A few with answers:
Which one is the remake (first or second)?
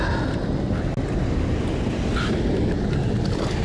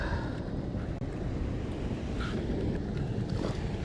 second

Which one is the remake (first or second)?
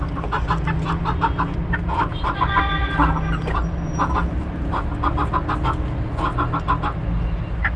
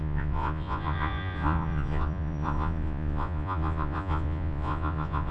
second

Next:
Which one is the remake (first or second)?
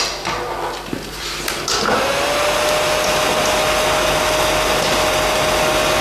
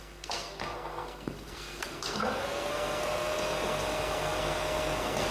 second